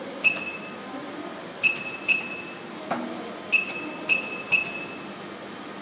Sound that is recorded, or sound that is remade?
recorded